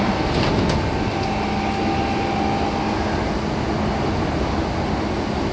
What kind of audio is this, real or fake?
real